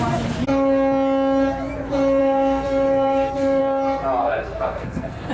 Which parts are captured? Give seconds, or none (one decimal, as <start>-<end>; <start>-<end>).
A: 0.0-2.2; 3.6-4.2